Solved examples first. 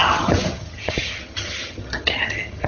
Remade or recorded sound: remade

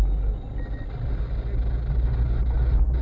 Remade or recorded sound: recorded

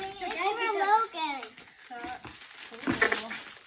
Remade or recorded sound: recorded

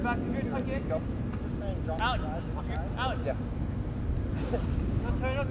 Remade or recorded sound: recorded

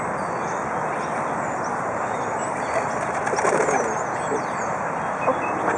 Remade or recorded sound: recorded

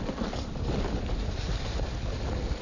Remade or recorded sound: recorded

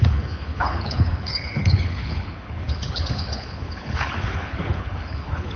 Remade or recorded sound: remade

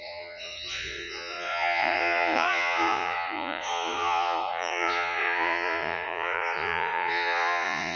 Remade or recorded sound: remade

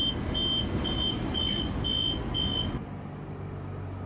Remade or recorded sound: recorded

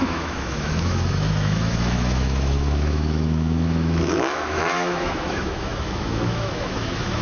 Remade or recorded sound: remade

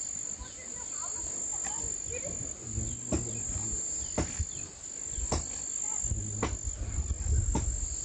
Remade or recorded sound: recorded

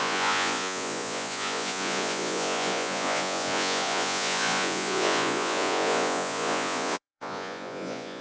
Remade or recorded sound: remade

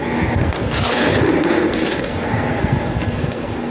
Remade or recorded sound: remade